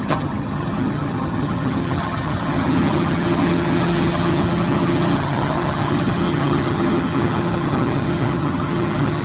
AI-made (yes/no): yes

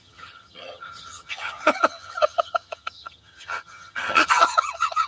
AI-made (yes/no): yes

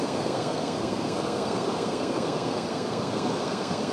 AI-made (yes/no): yes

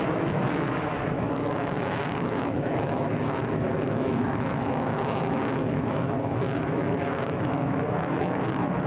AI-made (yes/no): yes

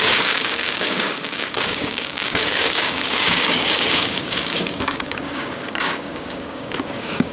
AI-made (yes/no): yes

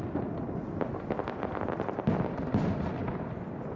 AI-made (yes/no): no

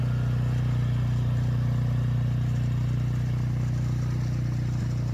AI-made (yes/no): no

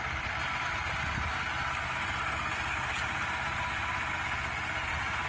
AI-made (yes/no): no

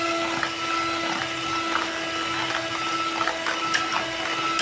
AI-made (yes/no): no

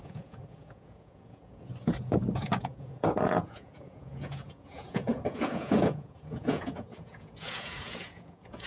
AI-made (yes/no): yes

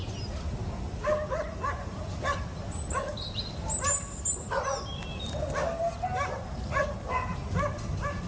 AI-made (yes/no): no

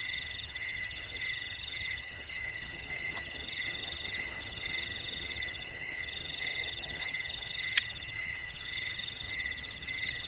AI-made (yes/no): yes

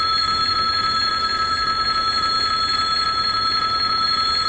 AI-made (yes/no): yes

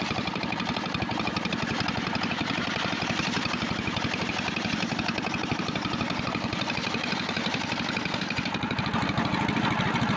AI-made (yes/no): yes